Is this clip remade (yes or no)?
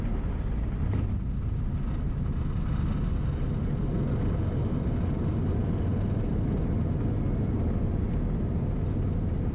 no